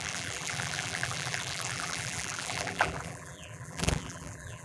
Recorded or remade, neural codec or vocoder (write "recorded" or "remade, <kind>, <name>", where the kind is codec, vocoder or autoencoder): remade, vocoder, BigVGAN v2